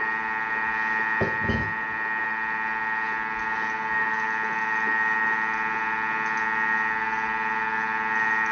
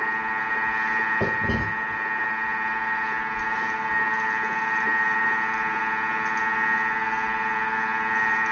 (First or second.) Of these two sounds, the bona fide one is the first